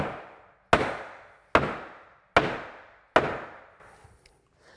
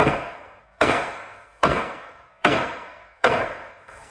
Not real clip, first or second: second